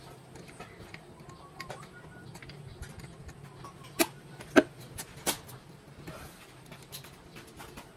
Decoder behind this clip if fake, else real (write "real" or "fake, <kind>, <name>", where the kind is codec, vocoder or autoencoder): real